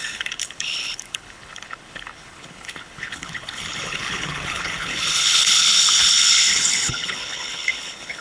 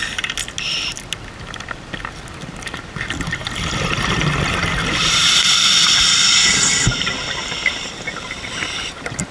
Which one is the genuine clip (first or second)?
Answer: second